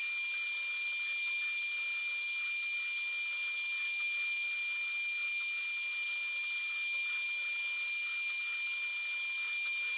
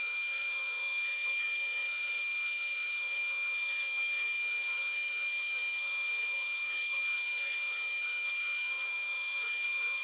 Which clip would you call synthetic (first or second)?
second